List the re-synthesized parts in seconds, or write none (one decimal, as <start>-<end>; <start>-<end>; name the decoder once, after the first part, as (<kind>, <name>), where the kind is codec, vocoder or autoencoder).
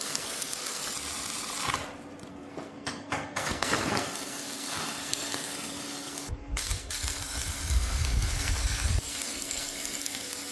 0.0-0.8 (codec, SNAC); 2.3-10.5